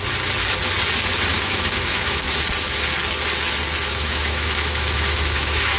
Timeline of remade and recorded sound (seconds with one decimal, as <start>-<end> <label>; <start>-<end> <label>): 0.0-1.3 recorded; 1.3-2.3 remade; 2.3-3.9 recorded; 3.9-5.8 remade